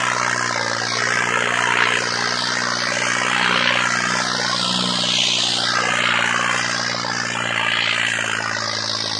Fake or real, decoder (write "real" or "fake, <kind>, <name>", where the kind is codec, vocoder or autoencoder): real